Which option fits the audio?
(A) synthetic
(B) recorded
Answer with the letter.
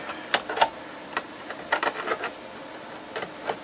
B